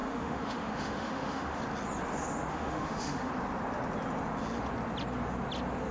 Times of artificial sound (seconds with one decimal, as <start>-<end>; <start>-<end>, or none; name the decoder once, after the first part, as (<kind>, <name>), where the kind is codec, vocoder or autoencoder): 0.0-1.6 (autoencoder, DAC-VAE); 2.5-3.3

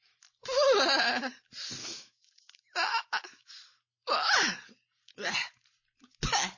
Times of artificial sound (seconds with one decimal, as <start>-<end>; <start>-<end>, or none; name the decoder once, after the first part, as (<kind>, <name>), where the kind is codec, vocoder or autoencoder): 1.8-3.5 (autoencoder, DAC-VAE)

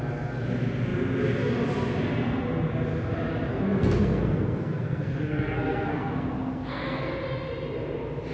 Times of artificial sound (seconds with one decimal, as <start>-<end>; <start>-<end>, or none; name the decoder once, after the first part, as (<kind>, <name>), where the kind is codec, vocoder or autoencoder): 3.5-7.1 (codec, SNAC)

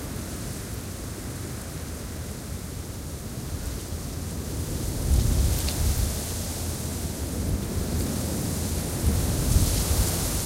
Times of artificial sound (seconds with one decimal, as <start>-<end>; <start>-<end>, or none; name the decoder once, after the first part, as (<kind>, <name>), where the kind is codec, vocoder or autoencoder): none

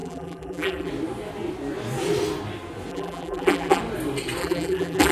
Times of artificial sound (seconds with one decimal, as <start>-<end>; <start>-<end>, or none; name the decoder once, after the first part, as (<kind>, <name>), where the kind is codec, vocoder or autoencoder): 0.0-0.9 (vocoder, BigVGAN v2); 2.9-3.8; 4.4-5.1